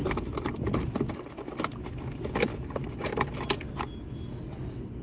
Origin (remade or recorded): recorded